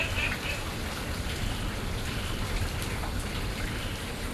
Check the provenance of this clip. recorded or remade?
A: recorded